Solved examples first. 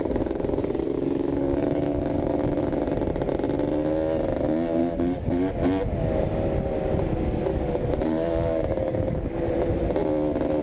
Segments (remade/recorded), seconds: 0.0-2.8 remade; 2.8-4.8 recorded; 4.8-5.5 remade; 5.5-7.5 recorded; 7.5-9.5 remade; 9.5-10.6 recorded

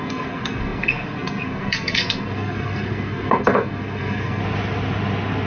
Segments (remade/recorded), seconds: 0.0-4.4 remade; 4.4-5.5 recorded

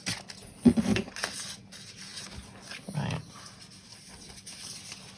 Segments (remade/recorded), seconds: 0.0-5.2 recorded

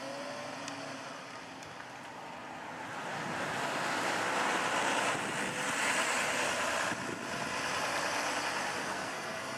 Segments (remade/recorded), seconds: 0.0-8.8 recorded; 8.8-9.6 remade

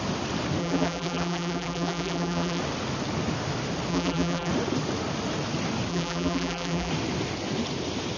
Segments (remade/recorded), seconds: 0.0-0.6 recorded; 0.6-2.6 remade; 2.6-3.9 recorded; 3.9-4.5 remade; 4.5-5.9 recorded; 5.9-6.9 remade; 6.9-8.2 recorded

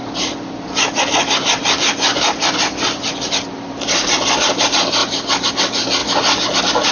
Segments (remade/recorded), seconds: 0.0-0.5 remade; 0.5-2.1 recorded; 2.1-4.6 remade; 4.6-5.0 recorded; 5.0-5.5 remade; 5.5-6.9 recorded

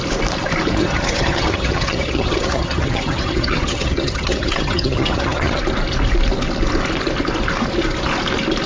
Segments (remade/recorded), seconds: 0.0-0.8 recorded; 0.8-5.6 remade; 5.6-8.7 recorded